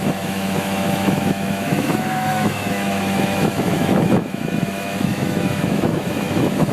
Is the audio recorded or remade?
remade